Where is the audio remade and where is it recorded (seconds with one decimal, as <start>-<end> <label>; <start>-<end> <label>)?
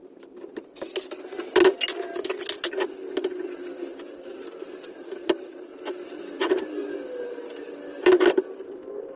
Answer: 0.0-9.2 recorded